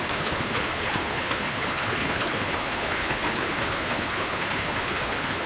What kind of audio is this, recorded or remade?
remade